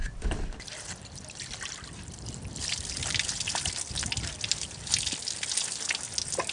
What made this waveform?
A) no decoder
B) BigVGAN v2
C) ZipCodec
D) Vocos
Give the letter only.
A